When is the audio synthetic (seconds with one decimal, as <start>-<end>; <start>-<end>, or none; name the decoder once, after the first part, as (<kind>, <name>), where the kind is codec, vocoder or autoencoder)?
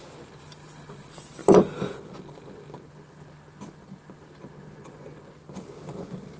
none